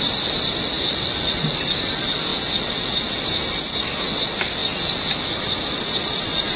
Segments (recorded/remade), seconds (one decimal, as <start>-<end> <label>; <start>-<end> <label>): 0.0-2.3 remade; 2.3-3.2 recorded; 3.2-4.6 remade; 4.6-5.2 recorded; 5.2-6.6 remade